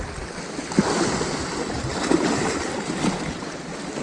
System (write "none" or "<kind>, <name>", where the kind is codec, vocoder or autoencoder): none